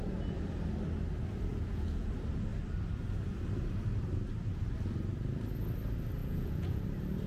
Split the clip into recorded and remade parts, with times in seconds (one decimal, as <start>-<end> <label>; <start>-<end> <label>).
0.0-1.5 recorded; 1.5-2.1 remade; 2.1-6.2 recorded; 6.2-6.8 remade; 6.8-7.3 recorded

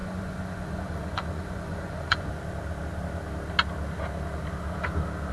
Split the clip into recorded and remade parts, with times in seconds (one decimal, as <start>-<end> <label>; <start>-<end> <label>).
0.0-2.3 remade; 2.3-5.3 recorded

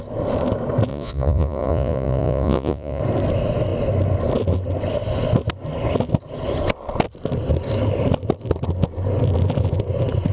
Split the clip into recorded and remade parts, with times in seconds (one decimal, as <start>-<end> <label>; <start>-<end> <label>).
0.0-0.9 recorded; 0.9-3.0 remade; 3.0-10.3 recorded